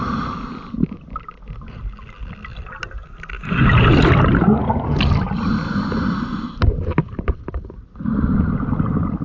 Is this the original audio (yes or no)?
yes